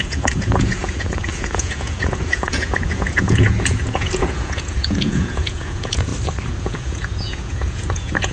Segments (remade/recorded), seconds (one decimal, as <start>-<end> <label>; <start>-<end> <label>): 0.0-6.1 remade; 6.1-6.6 recorded; 6.6-8.3 remade